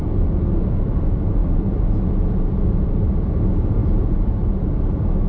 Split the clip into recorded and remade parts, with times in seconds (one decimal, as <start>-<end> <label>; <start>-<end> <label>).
0.0-5.3 recorded